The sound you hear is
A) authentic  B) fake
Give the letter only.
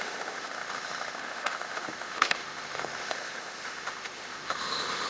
B